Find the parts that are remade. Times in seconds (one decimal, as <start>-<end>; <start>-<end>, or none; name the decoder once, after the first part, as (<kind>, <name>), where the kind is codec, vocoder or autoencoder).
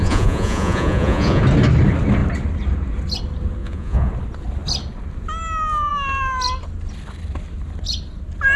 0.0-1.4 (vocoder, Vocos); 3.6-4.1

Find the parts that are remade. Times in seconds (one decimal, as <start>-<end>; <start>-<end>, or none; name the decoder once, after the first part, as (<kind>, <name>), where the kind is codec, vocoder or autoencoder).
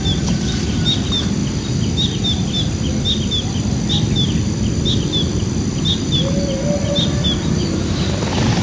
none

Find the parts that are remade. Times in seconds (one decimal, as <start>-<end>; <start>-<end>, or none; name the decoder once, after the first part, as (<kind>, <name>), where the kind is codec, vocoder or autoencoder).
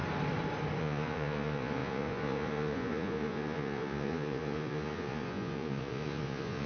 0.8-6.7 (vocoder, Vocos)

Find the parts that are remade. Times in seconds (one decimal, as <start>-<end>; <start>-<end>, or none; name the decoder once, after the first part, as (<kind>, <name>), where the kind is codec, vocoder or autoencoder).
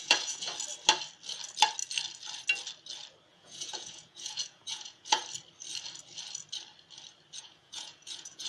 0.0-0.5 (vocoder, Vocos); 3.3-5.2; 7.4-8.5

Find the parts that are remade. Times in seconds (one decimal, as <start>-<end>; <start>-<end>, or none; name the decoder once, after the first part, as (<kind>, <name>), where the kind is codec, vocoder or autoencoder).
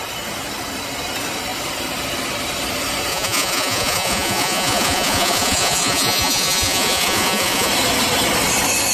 3.1-7.7 (vocoder, Vocos)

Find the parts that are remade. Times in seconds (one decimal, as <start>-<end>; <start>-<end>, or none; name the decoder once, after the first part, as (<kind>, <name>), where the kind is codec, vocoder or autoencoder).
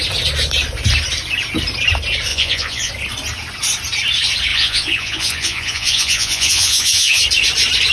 2.3-2.9 (vocoder, Vocos); 4.5-7.2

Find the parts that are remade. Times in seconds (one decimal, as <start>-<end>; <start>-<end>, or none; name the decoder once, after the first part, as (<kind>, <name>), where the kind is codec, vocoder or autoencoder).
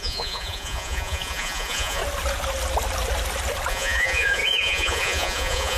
0.0-2.0 (vocoder, Vocos); 3.7-5.8